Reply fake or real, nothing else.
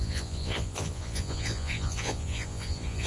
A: fake